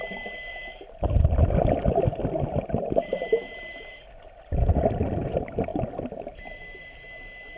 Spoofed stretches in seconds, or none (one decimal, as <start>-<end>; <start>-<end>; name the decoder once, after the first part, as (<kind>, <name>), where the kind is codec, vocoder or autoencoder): 0.5-4.5 (vocoder, BigVGAN v2); 5.7-6.6